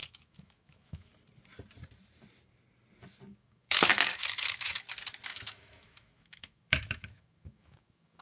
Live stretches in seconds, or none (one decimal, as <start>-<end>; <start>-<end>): 1.1-3.3; 4.8-5.3